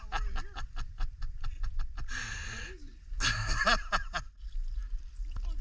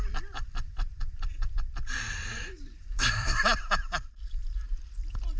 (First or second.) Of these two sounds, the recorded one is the first